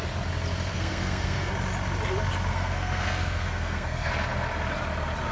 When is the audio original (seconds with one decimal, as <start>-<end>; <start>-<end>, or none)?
0.0-0.7; 1.5-2.5; 4.1-5.3